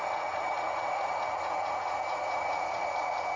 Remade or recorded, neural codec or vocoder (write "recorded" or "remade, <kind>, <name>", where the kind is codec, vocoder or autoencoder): remade, vocoder, Vocos